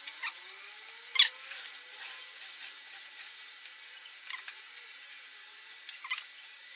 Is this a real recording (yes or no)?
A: yes